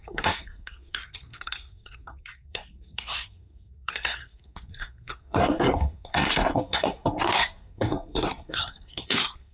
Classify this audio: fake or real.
fake